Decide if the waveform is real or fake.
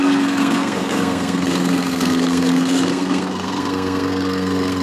fake